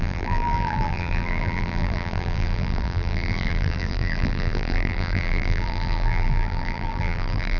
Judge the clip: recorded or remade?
remade